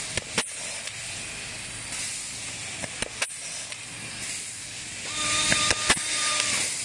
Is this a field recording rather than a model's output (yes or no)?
yes